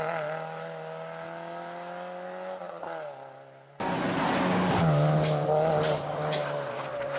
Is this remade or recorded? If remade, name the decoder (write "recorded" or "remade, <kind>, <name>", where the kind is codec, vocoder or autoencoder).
recorded